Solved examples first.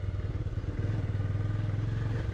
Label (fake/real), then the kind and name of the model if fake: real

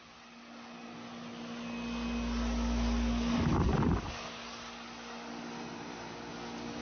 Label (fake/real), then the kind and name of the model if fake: real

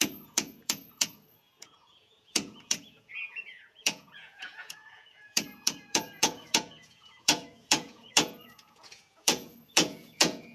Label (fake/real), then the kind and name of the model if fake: fake, vocoder, Vocos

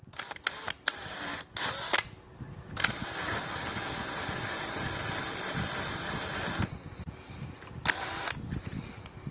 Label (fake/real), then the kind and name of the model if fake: real